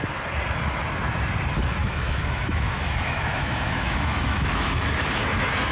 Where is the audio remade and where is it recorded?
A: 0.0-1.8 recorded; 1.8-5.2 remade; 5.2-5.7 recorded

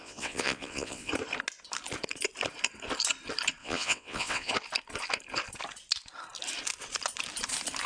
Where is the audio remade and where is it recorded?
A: 0.0-1.1 remade; 1.1-3.6 recorded; 3.6-4.5 remade; 4.5-7.9 recorded

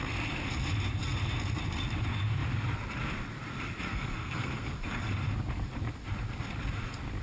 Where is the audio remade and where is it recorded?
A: 0.0-3.9 recorded; 3.9-5.1 remade; 5.1-7.2 recorded

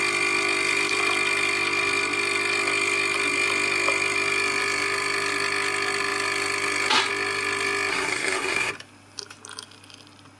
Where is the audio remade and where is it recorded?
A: 0.0-7.9 recorded; 7.9-8.7 remade; 8.7-10.4 recorded

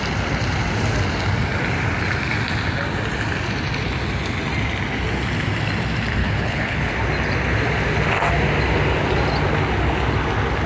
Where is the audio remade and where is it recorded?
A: 0.0-6.2 recorded; 6.2-6.9 remade; 6.9-10.7 recorded

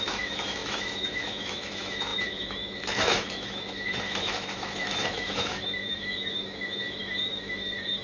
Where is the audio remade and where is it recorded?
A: 0.0-8.0 remade

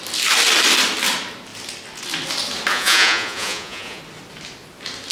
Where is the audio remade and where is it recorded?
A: 0.0-2.7 recorded; 2.7-4.0 remade; 4.0-5.1 recorded

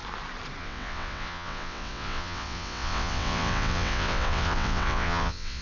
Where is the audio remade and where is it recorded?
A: 0.0-0.6 recorded; 0.6-5.6 remade